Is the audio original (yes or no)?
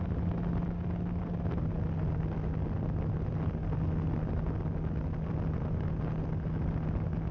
yes